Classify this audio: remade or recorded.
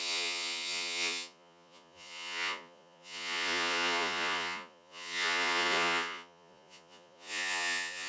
remade